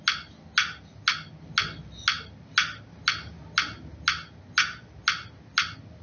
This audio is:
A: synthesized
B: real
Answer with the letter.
B